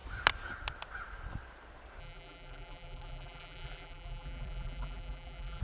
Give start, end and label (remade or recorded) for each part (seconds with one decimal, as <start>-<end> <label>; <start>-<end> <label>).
0.0-2.0 recorded; 2.0-5.6 remade